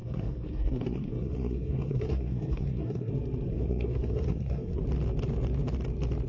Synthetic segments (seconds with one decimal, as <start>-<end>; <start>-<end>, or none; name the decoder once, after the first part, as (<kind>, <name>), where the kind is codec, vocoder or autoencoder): 0.0-3.1 (codec, SNAC); 3.5-4.8